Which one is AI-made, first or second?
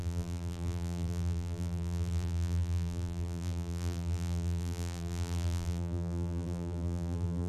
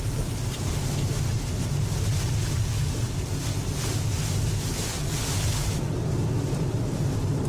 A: first